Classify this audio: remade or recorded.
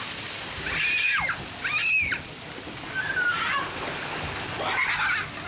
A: recorded